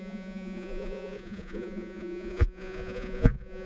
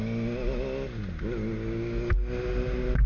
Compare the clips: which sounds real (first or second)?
second